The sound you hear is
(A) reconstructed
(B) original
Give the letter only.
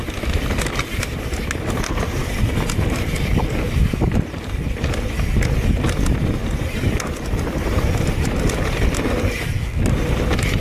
B